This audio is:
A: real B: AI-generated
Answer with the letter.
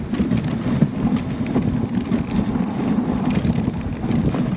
A